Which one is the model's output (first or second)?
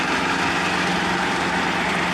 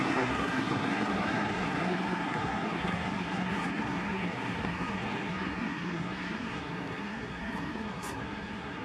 second